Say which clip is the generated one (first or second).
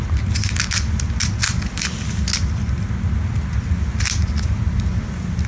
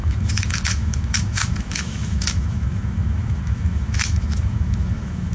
second